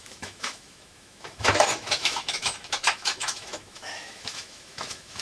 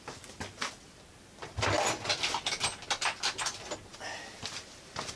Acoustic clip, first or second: second